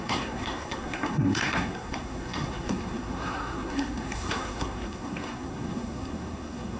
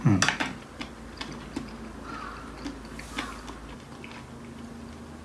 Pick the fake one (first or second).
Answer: first